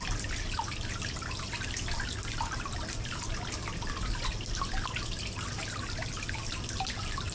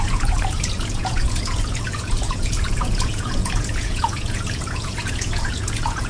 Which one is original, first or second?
first